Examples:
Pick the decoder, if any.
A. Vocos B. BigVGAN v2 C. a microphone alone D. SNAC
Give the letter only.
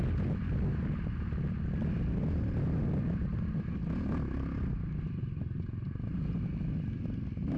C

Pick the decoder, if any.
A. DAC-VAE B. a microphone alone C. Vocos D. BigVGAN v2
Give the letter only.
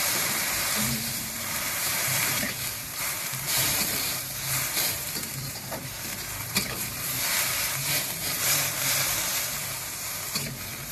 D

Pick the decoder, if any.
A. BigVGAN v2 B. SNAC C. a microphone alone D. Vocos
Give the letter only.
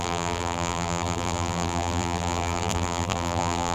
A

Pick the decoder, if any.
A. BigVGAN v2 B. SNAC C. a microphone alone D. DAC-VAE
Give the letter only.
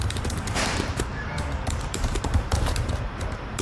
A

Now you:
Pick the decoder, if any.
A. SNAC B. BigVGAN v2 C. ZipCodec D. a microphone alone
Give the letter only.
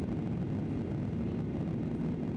D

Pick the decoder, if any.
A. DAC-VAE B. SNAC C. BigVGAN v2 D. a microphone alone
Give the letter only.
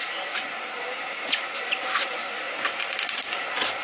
C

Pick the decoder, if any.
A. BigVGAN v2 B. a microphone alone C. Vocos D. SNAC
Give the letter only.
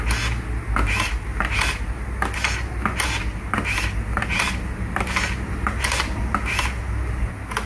B